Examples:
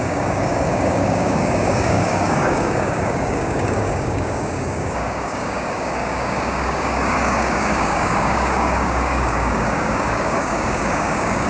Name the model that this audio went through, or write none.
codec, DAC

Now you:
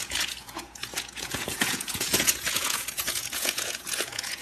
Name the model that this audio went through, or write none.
vocoder, Vocos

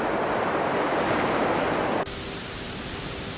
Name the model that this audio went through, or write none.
none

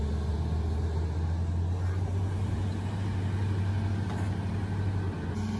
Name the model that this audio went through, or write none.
none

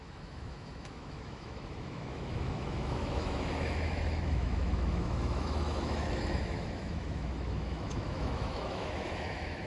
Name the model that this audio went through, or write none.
autoencoder, DAC-VAE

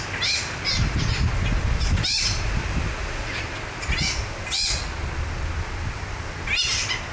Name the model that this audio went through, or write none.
none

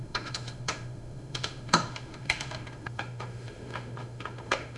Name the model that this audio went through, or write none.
autoencoder, DAC-VAE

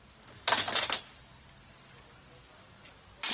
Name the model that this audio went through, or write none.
none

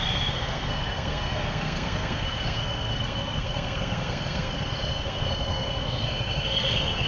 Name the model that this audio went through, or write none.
codec, SNAC